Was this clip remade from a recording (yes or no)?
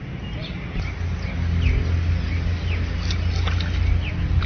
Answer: no